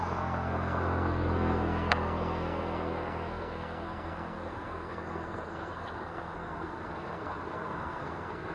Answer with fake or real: fake